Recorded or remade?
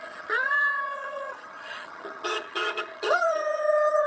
remade